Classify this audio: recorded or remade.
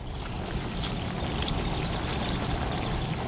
recorded